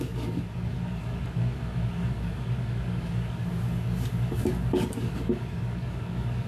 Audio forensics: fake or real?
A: fake